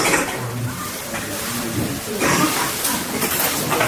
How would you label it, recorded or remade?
remade